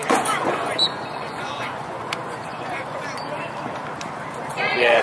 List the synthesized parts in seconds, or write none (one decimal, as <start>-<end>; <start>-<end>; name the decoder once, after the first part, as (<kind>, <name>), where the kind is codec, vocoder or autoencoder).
0.0-3.0 (vocoder, Vocos); 4.5-5.0